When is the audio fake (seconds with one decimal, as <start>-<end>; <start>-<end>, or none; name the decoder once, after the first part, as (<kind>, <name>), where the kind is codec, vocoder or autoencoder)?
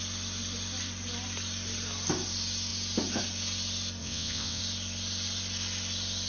4.0-4.6 (vocoder, WaveNeXt)